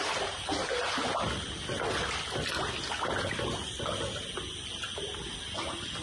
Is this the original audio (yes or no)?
yes